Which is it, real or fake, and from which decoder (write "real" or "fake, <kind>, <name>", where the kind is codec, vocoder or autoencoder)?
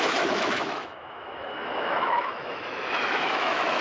fake, autoencoder, DAC-VAE